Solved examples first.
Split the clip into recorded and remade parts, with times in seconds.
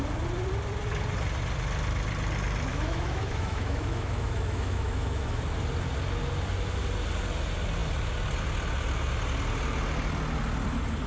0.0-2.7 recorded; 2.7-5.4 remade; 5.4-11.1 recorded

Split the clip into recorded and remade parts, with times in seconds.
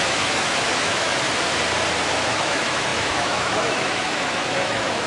0.0-1.1 remade; 1.1-2.3 recorded; 2.3-5.1 remade